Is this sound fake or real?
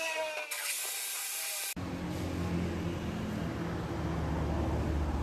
real